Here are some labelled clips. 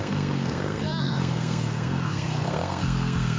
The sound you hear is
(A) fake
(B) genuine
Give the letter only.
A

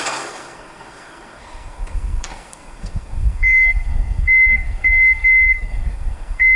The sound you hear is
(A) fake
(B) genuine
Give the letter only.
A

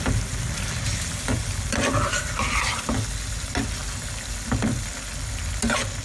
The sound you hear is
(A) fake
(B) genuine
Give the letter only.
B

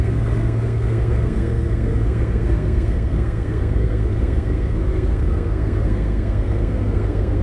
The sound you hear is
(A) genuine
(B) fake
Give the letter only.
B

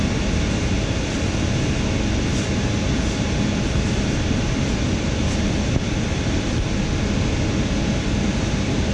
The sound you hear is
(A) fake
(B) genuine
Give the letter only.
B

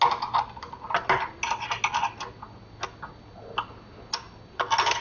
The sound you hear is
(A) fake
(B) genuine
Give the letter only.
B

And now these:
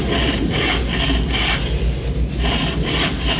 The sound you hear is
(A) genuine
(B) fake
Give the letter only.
A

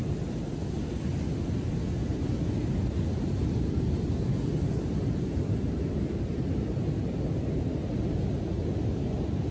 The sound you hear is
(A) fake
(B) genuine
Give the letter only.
B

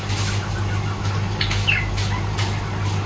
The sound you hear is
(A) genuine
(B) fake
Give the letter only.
A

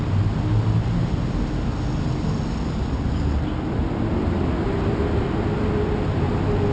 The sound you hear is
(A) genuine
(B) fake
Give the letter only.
A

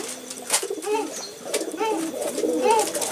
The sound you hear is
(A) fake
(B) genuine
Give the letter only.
B